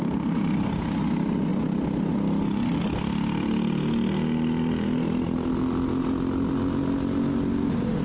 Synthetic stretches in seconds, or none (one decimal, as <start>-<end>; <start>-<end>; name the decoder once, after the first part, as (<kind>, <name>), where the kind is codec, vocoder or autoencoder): none